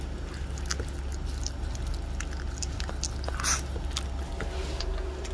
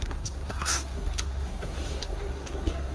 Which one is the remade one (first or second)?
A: second